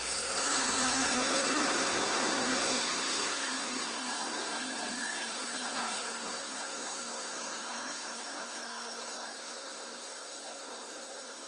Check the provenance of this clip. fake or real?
fake